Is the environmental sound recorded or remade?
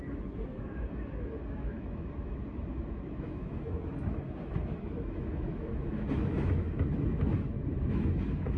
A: remade